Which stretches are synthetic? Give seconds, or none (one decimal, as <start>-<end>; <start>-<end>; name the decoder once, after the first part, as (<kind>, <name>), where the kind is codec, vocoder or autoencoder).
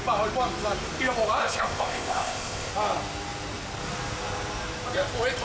1.4-2.7 (codec, ZipCodec)